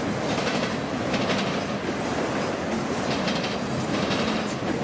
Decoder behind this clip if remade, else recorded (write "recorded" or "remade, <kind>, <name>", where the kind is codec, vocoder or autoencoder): recorded